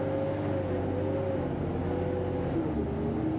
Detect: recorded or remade recorded